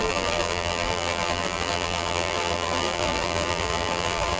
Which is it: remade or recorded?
remade